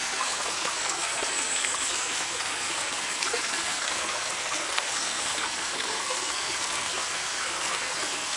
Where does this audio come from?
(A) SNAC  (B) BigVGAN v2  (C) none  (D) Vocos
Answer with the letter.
A